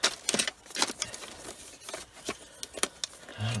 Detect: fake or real real